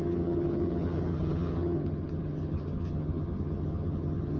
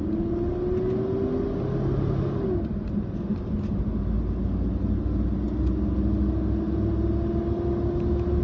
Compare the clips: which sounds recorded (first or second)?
second